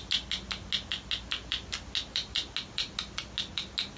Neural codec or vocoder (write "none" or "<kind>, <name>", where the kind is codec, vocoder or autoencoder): none